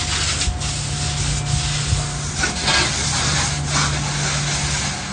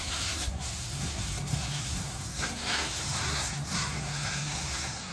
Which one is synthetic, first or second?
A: second